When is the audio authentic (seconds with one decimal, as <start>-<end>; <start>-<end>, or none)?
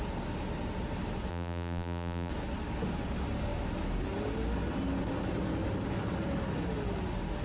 0.0-1.3; 2.3-7.4